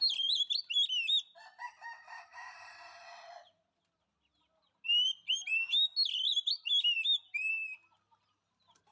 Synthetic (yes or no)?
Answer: no